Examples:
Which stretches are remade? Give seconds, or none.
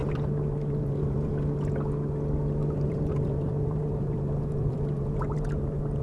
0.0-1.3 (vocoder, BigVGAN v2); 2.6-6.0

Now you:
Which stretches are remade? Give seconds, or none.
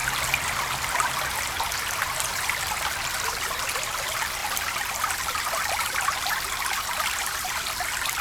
2.3-2.8 (vocoder, BigVGAN v2); 4.4-5.7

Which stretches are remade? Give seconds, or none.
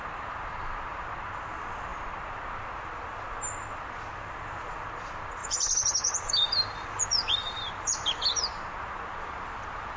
5.4-6.3 (vocoder, BigVGAN v2); 7.4-8.2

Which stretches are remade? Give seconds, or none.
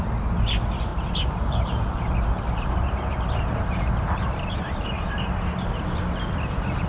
0.9-5.0 (vocoder, BigVGAN v2)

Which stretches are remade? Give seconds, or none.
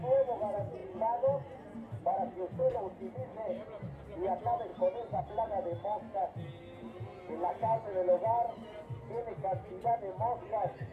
2.6-3.9 (vocoder, BigVGAN v2); 4.7-5.2